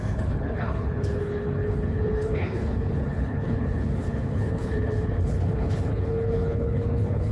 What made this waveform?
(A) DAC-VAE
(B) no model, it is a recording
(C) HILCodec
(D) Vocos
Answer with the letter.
C